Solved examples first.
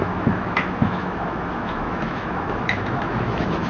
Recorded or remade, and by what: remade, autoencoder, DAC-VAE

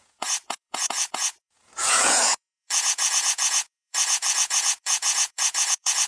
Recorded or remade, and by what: remade, vocoder, Vocos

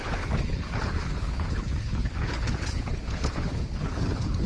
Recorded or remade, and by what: remade, codec, HILCodec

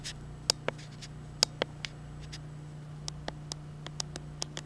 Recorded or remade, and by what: recorded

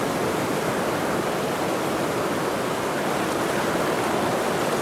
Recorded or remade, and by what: recorded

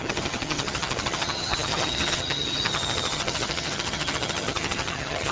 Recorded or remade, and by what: remade, vocoder, HiFi-GAN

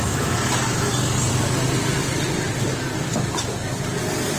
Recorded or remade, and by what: recorded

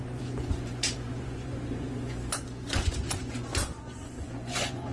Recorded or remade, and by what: remade, vocoder, Vocos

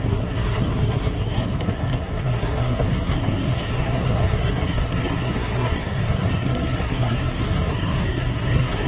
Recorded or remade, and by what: remade, codec, SNAC